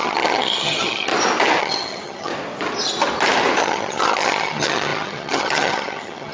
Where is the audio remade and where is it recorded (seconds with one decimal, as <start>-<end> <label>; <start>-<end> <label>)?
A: 0.0-1.1 remade; 1.1-1.6 recorded; 1.6-2.3 remade; 2.3-3.6 recorded; 3.6-6.3 remade